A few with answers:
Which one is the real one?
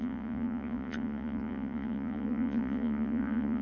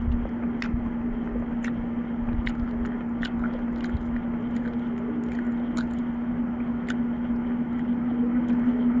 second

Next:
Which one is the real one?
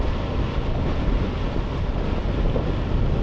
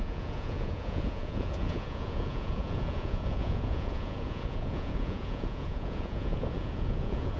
first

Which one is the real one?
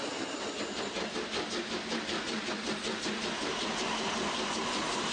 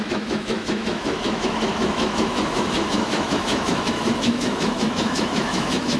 first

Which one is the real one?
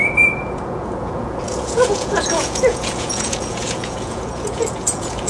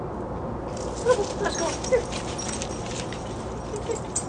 second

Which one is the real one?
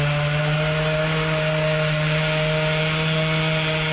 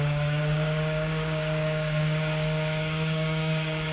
first